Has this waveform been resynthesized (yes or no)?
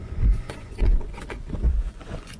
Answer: yes